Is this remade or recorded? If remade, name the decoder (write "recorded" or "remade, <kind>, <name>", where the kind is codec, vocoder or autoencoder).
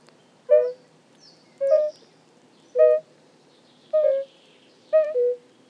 remade, vocoder, BigVGAN v2